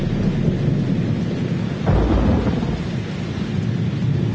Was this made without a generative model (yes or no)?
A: yes